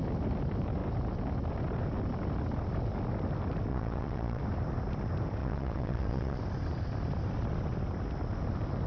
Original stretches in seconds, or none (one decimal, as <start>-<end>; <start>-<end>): 0.0-3.7; 4.4-5.4; 6.4-8.9